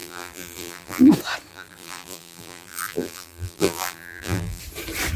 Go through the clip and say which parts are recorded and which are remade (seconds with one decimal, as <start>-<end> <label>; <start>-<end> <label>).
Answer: 0.0-1.1 remade; 1.1-1.5 recorded; 1.5-4.6 remade; 4.6-5.2 recorded